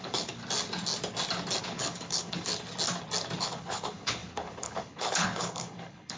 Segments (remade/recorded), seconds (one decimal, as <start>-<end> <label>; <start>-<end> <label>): 0.0-0.4 remade; 0.4-1.6 recorded; 1.6-2.5 remade; 2.5-3.4 recorded; 3.4-6.2 remade